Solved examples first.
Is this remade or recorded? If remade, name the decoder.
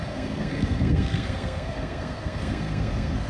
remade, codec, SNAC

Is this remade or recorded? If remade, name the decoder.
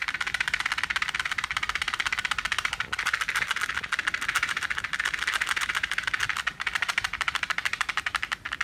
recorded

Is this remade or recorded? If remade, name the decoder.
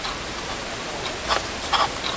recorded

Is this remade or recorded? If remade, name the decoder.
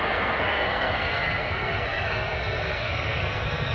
remade, codec, SNAC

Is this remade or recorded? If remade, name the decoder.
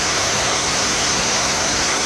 remade, codec, SNAC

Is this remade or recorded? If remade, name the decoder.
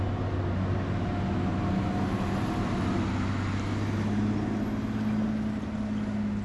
recorded